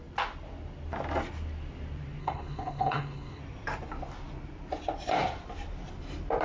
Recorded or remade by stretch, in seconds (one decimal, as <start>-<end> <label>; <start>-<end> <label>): 0.0-2.2 recorded; 2.2-3.4 remade; 3.4-6.4 recorded